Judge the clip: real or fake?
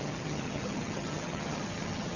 fake